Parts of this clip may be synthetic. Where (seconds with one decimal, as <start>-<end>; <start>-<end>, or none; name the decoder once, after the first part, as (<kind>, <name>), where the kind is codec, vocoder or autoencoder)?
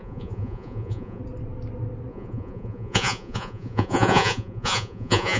0.0-1.2 (vocoder, Vocos); 2.1-5.4